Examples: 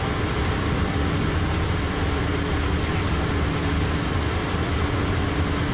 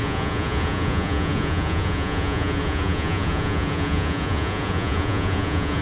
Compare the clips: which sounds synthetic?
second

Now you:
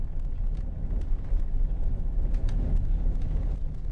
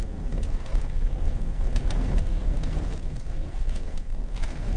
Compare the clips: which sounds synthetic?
second